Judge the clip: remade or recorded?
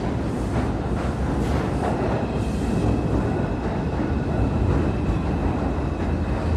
recorded